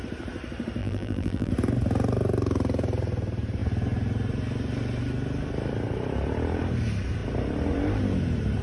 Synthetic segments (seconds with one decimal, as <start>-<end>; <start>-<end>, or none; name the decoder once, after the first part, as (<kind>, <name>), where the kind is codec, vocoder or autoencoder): 0.8-1.5 (vocoder, BigVGAN v2)